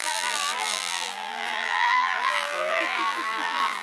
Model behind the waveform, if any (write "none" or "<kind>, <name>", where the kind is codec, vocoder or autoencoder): vocoder, BigVGAN v2